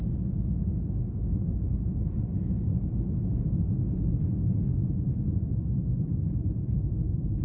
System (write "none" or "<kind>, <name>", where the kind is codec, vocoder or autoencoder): none